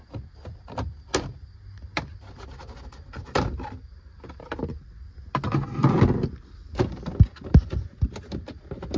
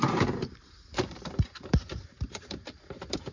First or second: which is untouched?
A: first